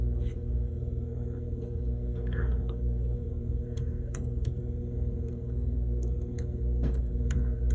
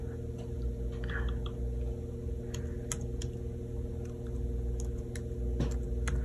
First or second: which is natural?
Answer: second